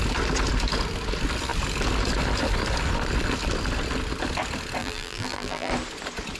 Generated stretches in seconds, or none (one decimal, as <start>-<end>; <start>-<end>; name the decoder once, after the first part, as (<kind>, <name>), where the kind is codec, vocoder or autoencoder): 4.8-5.7 (vocoder, BigVGAN v2)

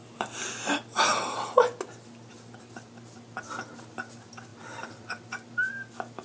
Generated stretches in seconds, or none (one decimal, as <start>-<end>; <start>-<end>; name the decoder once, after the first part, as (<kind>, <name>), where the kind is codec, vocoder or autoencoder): 4.5-5.7 (vocoder, BigVGAN v2)

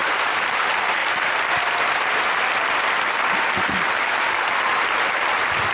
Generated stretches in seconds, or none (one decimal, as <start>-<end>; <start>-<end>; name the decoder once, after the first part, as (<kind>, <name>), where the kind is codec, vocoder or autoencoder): none

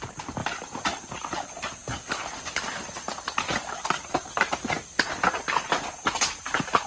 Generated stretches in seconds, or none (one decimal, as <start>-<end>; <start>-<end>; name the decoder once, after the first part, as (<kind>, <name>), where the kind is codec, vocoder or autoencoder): none

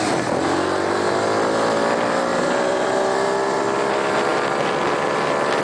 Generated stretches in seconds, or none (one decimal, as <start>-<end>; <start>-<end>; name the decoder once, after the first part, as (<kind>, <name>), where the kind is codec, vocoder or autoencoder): 2.3-3.6 (vocoder, BigVGAN v2)